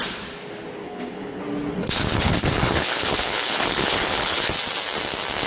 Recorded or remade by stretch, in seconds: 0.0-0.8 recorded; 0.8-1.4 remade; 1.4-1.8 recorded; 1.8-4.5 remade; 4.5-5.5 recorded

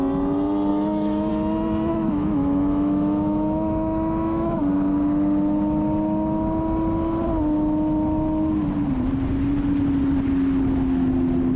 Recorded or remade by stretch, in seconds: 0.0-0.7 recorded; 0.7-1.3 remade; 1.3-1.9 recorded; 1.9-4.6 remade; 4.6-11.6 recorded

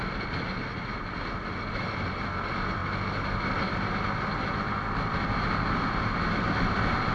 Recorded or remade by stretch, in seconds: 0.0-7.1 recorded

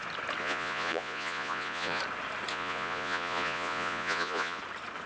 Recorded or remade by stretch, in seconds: 0.0-0.4 recorded; 0.4-2.0 remade; 2.0-2.5 recorded; 2.5-4.6 remade; 4.6-5.1 recorded

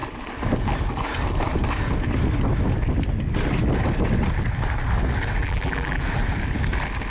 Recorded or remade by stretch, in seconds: 0.0-5.4 recorded; 5.4-6.0 remade; 6.0-7.1 recorded

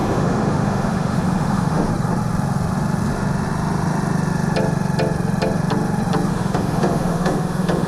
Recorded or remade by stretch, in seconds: 0.0-1.9 remade; 1.9-6.3 recorded; 6.3-7.9 remade